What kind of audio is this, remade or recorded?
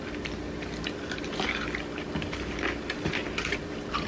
remade